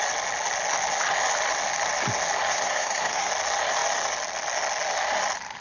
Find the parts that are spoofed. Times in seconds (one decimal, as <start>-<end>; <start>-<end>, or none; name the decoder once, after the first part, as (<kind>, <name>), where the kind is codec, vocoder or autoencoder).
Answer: 2.5-3.3 (codec, SNAC)